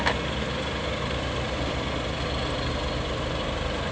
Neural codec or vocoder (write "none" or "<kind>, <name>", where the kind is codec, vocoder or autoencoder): none